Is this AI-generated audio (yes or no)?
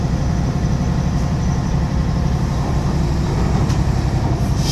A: yes